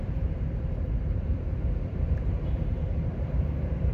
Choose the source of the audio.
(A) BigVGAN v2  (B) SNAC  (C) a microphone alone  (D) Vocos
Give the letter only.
A